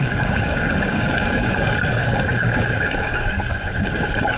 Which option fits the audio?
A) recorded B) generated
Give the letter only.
B